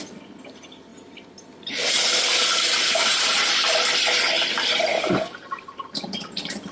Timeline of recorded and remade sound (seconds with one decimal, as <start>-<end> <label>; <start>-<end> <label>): 0.0-6.7 remade